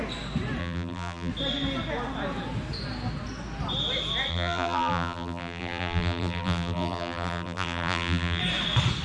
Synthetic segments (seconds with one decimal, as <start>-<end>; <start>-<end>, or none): 0.6-1.3; 4.3-8.4